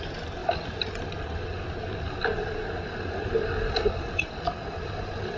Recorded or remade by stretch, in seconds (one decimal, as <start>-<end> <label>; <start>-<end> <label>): 0.0-5.4 recorded